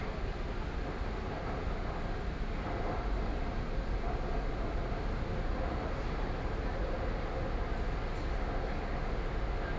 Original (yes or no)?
yes